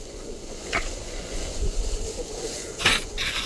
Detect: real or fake fake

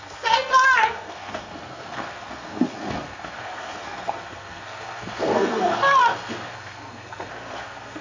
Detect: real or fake fake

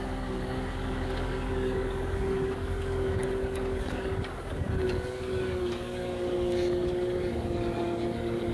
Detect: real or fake fake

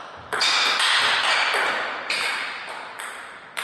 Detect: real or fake real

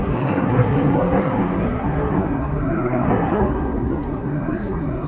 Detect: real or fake fake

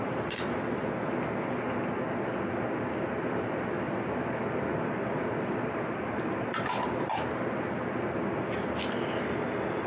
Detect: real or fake real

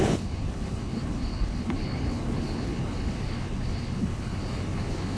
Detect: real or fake fake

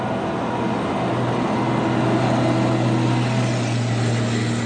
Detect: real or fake real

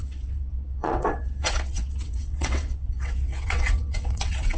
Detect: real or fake fake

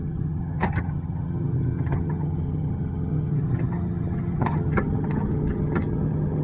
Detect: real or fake fake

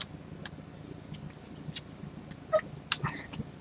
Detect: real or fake real